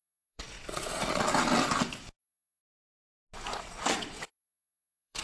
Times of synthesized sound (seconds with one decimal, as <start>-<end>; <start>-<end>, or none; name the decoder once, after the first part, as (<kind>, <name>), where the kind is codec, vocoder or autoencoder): 0.0-1.3 (vocoder, Vocos); 2.2-2.6; 3.7-5.2